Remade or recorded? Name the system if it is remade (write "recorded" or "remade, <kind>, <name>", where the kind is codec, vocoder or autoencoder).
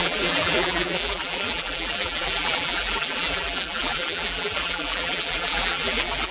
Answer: remade, vocoder, BigVGAN v2